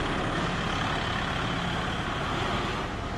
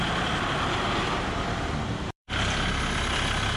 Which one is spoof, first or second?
second